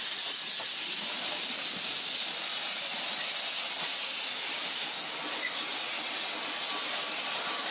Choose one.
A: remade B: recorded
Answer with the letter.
B